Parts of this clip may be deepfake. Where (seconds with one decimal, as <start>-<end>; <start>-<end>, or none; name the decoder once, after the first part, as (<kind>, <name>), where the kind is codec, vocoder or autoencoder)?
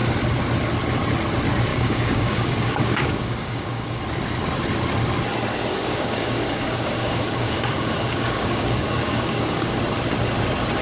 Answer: 1.7-4.0 (codec, DAC); 5.7-9.8